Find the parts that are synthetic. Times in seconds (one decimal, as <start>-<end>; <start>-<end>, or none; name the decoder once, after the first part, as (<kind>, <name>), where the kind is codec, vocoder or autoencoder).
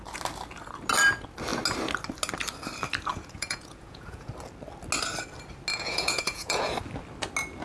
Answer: 3.1-4.3 (vocoder, Vocos); 5.7-6.7